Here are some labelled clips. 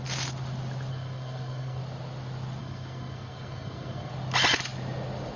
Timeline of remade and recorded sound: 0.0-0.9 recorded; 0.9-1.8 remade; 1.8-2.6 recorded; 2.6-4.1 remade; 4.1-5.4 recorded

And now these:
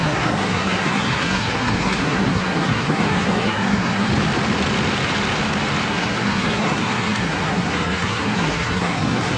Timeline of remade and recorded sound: 0.0-4.1 remade; 4.1-5.9 recorded; 5.9-9.4 remade